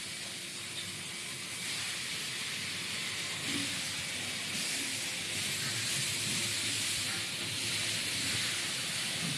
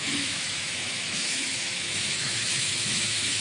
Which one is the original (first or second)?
first